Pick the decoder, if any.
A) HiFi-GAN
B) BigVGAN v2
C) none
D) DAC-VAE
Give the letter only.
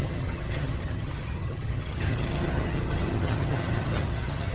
A